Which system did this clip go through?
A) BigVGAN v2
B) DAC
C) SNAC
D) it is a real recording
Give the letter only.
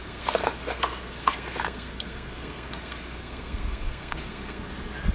C